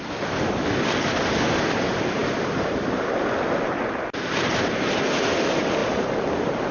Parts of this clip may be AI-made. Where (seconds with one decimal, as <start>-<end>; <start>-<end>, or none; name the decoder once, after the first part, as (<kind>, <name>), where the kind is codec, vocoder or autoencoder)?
none